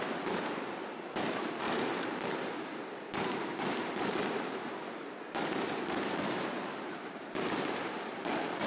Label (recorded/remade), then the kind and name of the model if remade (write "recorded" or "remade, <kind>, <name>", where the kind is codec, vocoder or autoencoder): remade, vocoder, BigVGAN v2